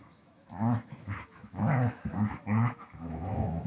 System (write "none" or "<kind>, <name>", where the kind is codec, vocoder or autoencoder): autoencoder, DAC-VAE